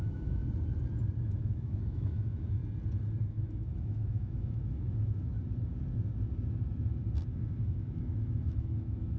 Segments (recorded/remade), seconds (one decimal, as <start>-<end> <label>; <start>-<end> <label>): 0.0-0.4 remade; 0.4-1.2 recorded; 1.2-2.6 remade; 2.6-3.3 recorded; 3.3-5.3 remade; 5.3-7.7 recorded; 7.7-9.2 remade